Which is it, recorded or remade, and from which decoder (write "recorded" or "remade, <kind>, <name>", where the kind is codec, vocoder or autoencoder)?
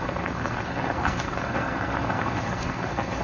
remade, codec, SNAC